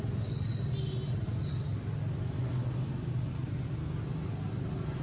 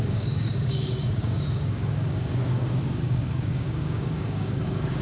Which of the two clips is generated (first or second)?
second